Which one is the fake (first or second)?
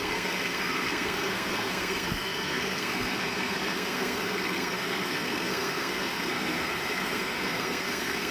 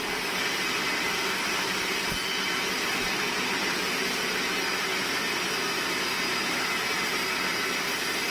first